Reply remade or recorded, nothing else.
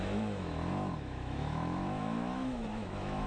remade